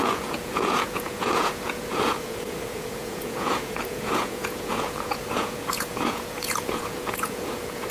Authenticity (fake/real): fake